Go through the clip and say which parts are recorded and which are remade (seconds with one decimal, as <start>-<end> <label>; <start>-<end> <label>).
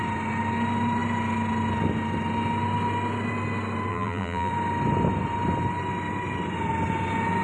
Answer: 0.0-3.9 recorded; 3.9-4.5 remade; 4.5-7.4 recorded